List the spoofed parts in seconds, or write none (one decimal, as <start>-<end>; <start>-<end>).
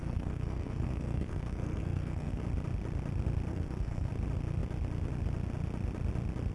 0.0-2.4; 3.5-4.1